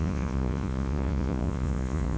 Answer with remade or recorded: remade